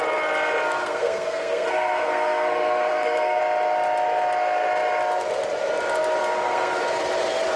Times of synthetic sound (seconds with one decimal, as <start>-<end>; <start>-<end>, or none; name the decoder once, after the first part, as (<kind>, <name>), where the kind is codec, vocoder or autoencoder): 0.8-3.4 (codec, SNAC); 6.2-6.8